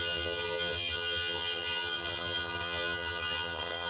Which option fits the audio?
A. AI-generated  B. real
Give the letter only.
A